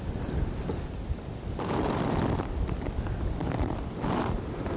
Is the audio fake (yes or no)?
no